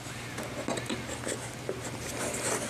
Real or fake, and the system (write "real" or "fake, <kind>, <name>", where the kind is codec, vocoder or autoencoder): real